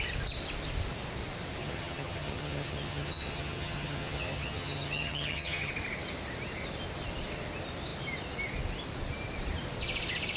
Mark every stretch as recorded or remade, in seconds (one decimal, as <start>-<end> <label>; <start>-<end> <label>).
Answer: 0.0-1.6 recorded; 1.6-5.7 remade; 5.7-10.4 recorded